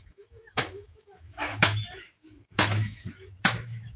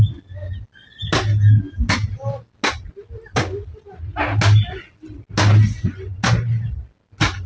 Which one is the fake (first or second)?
first